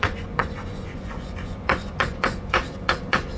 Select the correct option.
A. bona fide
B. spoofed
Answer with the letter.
B